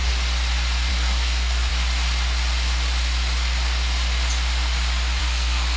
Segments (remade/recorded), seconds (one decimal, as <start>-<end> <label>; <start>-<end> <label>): 0.0-0.9 recorded; 0.9-1.7 remade; 1.7-5.2 recorded; 5.2-5.8 remade